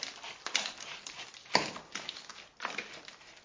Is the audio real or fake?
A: real